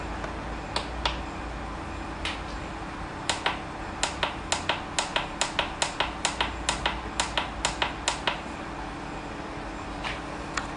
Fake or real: real